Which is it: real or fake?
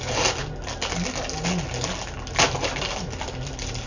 real